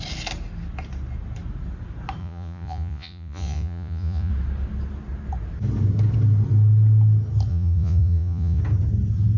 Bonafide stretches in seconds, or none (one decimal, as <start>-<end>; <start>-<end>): 0.0-2.2; 4.3-7.5; 8.6-9.4